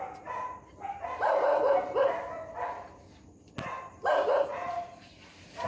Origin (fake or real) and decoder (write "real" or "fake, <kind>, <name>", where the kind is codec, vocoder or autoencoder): real